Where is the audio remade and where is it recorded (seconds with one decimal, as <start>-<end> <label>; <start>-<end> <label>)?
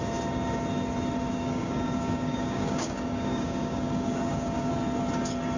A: 0.0-1.3 recorded; 1.3-4.7 remade; 4.7-5.6 recorded